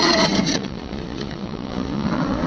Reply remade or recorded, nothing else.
remade